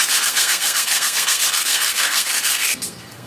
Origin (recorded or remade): remade